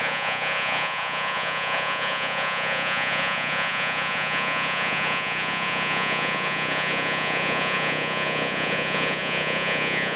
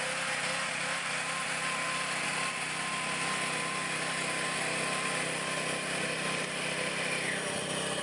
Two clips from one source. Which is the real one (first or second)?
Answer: second